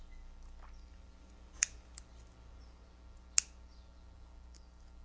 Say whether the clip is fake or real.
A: real